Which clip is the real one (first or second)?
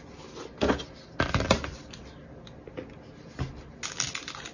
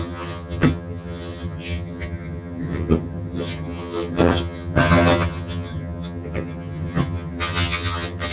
first